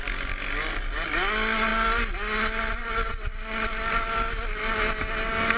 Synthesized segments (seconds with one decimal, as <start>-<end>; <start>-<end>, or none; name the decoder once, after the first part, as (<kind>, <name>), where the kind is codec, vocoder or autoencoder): none